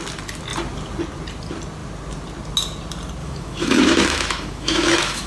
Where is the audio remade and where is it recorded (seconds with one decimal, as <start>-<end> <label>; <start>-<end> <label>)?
0.0-3.2 recorded; 3.2-5.3 remade